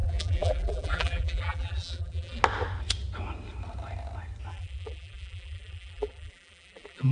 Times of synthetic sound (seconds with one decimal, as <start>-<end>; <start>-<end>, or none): 0.0-2.4; 4.5-7.1